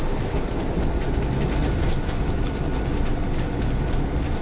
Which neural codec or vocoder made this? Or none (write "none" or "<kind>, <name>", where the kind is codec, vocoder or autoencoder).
none